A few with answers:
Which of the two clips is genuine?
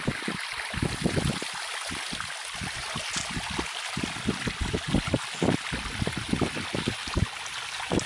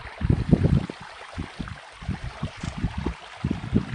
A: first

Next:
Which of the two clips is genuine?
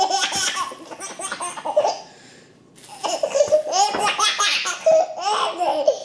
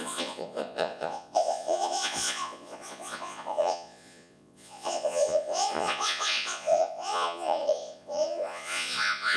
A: first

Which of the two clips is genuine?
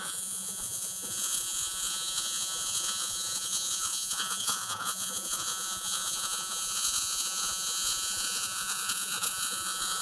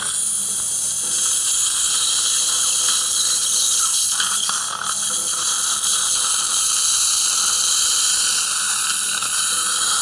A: second